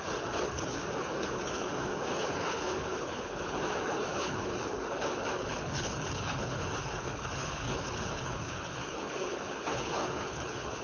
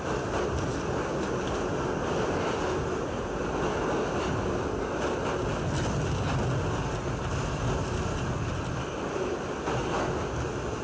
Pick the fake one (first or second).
first